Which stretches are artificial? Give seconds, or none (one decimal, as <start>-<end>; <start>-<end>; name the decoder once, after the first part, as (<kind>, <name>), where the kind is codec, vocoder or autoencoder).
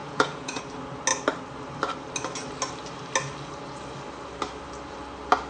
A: 0.0-0.6 (vocoder, Vocos)